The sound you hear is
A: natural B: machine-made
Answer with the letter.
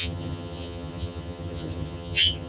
B